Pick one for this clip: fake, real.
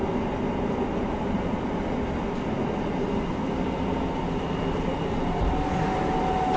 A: real